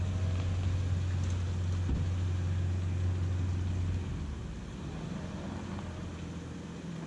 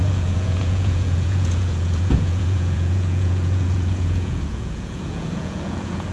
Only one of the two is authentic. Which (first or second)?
first